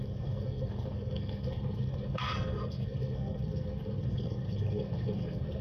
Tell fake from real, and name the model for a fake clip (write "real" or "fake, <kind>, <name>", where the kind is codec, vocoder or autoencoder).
fake, codec, SNAC